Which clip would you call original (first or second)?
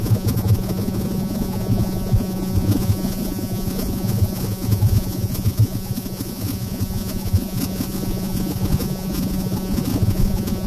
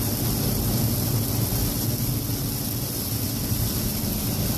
second